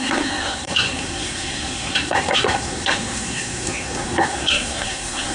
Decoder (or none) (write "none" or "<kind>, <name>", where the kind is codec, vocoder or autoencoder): codec, SNAC